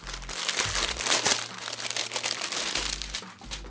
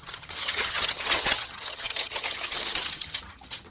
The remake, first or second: second